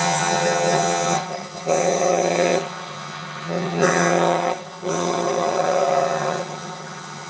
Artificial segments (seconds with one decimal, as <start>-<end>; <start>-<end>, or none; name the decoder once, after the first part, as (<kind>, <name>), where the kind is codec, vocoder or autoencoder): 0.0-7.3 (vocoder, HiFi-GAN)